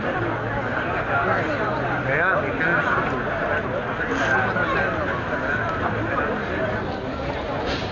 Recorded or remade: recorded